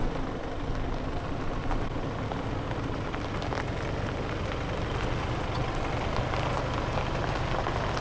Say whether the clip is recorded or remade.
recorded